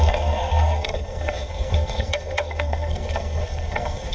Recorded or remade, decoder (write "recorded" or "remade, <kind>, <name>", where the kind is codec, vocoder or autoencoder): remade, codec, SNAC